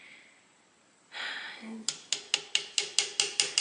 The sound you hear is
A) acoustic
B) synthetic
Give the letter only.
A